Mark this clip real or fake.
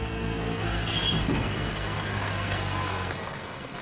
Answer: fake